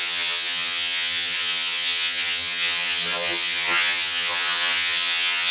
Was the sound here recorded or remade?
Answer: remade